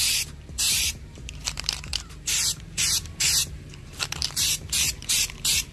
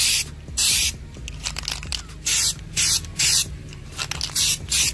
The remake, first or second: first